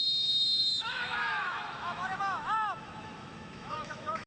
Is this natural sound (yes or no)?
no